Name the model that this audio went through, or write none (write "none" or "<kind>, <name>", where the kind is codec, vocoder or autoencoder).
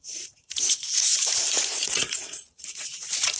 vocoder, Vocos